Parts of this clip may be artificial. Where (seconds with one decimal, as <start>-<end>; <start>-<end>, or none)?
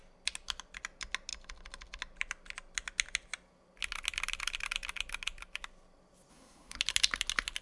6.3-6.8